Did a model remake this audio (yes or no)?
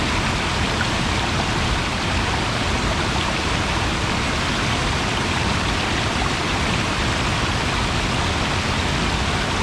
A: no